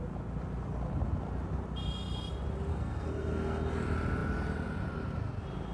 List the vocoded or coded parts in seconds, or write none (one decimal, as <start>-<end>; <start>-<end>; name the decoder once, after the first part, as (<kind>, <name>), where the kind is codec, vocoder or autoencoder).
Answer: 2.7-3.7 (codec, SNAC)